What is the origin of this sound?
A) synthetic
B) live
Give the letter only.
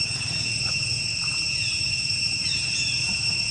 A